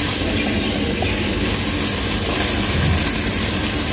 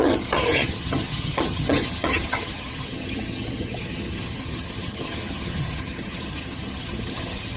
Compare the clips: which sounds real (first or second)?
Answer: first